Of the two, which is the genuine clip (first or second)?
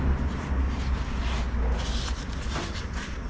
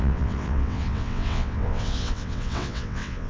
first